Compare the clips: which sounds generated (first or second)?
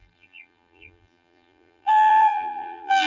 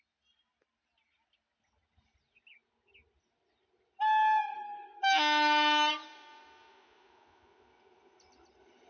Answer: first